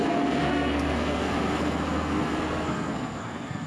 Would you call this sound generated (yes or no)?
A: yes